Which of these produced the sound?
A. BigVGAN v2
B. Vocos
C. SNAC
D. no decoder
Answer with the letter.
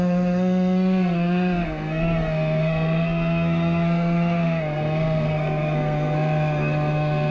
C